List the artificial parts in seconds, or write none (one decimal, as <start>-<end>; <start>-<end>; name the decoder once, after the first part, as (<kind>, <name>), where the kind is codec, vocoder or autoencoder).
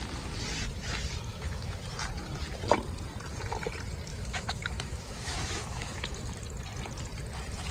1.3-1.8 (autoencoder, DAC-VAE); 4.1-6.1